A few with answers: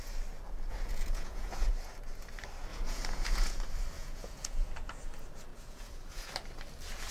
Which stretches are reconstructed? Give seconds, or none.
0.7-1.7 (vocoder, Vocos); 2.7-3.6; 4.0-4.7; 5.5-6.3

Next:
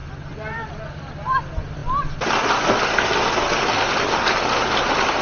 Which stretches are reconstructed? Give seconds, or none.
none

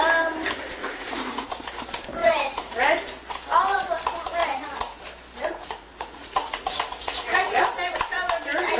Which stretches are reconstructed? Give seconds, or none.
0.8-1.5 (vocoder, Vocos); 2.2-2.8; 4.4-5.0; 5.5-7.6

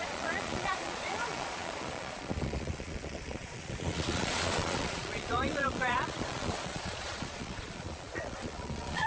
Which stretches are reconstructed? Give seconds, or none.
0.0-9.1 (vocoder, Vocos)

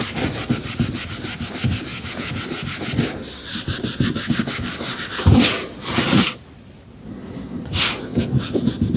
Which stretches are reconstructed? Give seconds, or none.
1.9-2.9 (vocoder, Vocos); 8.1-9.0